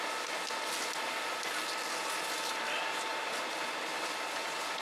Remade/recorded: recorded